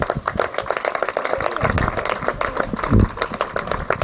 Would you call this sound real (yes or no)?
yes